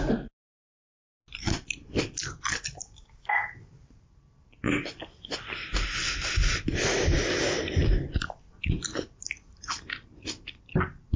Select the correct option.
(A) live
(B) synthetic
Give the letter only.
A